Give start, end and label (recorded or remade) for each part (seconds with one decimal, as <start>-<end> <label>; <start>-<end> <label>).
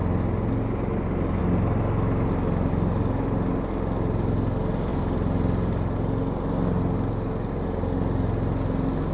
0.0-9.1 recorded